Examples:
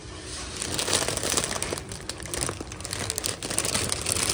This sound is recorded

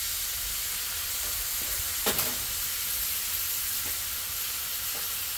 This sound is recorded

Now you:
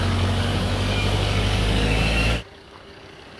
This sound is remade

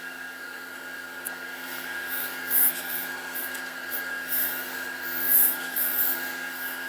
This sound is remade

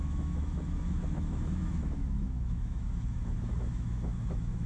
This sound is remade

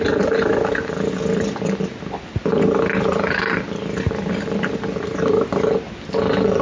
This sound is recorded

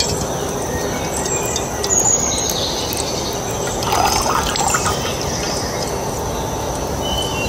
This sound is recorded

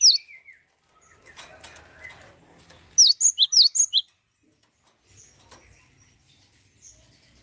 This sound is recorded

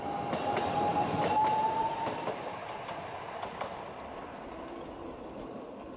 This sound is recorded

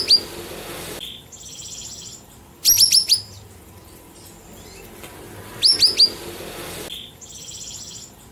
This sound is recorded